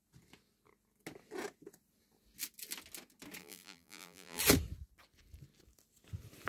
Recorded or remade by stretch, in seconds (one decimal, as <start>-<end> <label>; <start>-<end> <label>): 0.0-3.4 recorded; 3.4-4.4 remade; 4.4-6.5 recorded

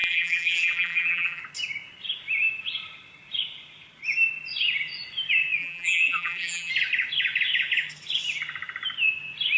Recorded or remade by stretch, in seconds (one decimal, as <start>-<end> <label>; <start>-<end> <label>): 0.0-1.4 remade; 1.4-5.6 recorded; 5.6-6.7 remade; 6.7-9.6 recorded

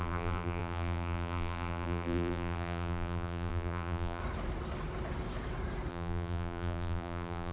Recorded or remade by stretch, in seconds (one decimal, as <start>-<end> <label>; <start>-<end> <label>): 0.0-4.2 remade; 4.2-5.9 recorded; 5.9-7.5 remade

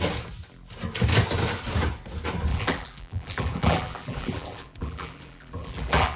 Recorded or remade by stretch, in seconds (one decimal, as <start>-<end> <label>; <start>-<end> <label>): 0.0-2.5 recorded; 2.5-6.2 remade

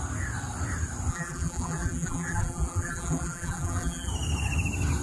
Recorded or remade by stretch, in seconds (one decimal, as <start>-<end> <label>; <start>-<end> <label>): 0.0-1.1 recorded; 1.1-4.1 remade; 4.1-5.0 recorded

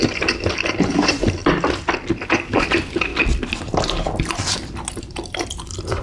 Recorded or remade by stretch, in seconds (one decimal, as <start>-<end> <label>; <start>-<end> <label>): 0.0-1.4 remade; 1.4-2.5 recorded; 2.5-3.1 remade; 3.1-4.9 recorded; 4.9-6.0 remade

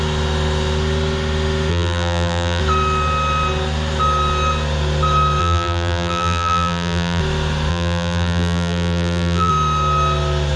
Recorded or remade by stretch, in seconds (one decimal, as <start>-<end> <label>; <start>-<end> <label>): 0.0-1.7 recorded; 1.7-2.6 remade; 2.6-5.4 recorded; 5.4-7.2 remade; 7.2-7.7 recorded; 7.7-9.5 remade; 9.5-10.6 recorded